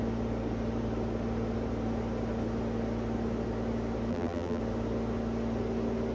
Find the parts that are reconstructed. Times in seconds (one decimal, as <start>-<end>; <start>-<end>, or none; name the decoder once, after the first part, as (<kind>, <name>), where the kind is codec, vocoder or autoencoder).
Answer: 4.1-4.6 (vocoder, BigVGAN v2)